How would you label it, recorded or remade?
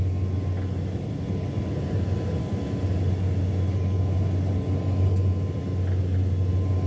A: recorded